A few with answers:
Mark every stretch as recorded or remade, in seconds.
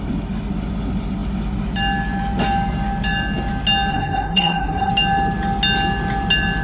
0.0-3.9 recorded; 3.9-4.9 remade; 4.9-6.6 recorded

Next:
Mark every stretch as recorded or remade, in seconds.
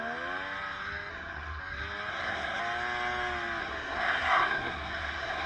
0.0-1.1 recorded; 1.1-1.6 remade; 1.6-2.1 recorded; 2.1-2.6 remade; 2.6-3.6 recorded; 3.6-5.5 remade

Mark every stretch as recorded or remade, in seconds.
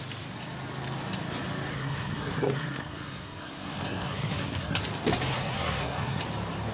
0.0-1.7 recorded; 1.7-4.8 remade; 4.8-5.3 recorded; 5.3-6.2 remade; 6.2-6.7 recorded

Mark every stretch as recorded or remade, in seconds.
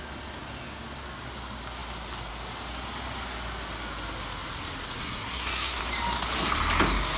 0.0-5.0 recorded; 5.0-5.8 remade; 5.8-7.2 recorded